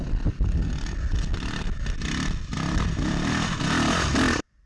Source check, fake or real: real